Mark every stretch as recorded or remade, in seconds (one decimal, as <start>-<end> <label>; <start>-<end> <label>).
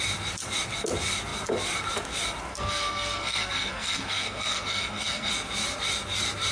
0.0-2.5 recorded; 2.5-5.3 remade; 5.3-6.5 recorded